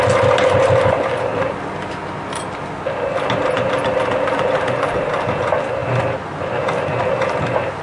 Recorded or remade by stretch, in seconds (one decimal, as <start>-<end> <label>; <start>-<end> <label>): 0.0-7.8 recorded